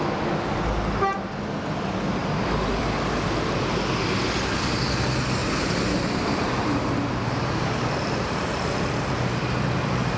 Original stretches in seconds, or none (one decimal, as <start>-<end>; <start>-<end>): 0.0-5.4; 9.4-10.2